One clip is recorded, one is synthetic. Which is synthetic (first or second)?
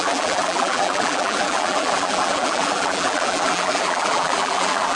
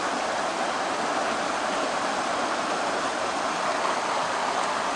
first